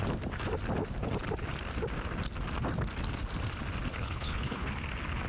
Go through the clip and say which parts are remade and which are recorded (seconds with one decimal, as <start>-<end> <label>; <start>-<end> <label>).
0.0-3.9 recorded; 3.9-4.7 remade; 4.7-5.3 recorded